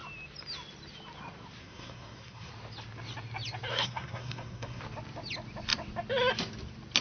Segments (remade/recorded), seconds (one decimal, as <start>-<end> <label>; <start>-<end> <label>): 0.0-1.6 recorded; 1.6-2.5 remade; 2.5-3.7 recorded; 3.7-4.8 remade; 4.8-7.0 recorded